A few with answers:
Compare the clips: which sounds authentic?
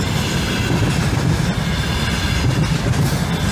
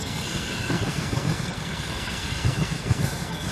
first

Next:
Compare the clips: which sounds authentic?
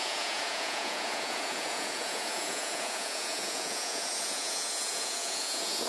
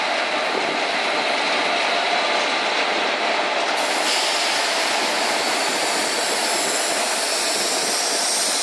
second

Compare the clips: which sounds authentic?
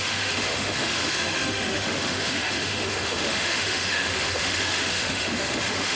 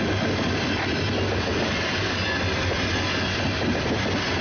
second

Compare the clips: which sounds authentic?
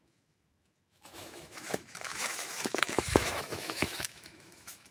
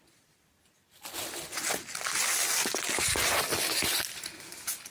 second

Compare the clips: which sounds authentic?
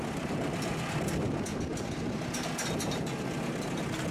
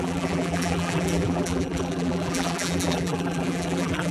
first